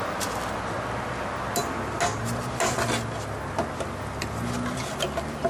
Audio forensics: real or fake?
real